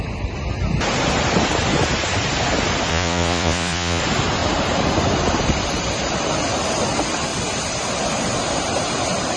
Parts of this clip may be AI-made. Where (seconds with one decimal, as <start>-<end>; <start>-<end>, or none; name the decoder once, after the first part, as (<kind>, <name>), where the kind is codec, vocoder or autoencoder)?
2.9-4.0 (vocoder, Vocos)